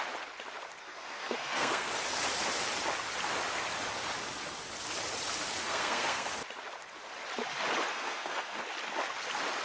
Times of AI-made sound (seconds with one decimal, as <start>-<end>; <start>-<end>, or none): 0.8-1.9; 5.6-6.3; 7.9-8.6